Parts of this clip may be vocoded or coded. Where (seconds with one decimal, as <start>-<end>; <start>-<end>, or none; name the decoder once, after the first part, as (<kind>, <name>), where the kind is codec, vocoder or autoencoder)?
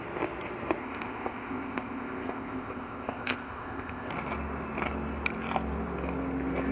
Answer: 0.8-4.1 (codec, ZipCodec)